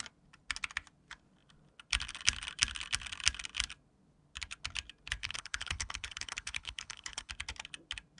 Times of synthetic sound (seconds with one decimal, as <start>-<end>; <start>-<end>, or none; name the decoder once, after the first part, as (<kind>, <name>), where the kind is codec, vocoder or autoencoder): 5.2-7.3 (codec, HILCodec)